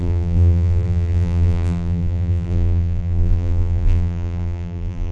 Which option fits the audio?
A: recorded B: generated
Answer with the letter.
B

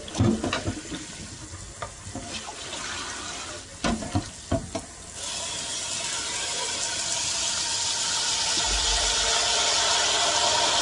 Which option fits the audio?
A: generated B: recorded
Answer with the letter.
B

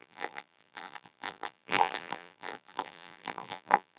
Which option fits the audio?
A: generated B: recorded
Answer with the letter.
A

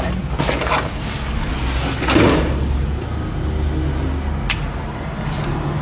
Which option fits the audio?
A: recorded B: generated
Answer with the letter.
A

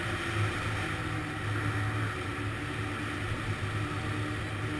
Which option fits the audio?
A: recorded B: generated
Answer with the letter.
A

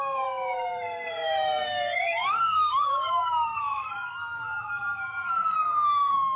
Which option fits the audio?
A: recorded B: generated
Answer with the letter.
B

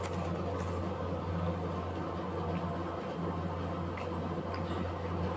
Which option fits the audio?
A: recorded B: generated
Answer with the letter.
A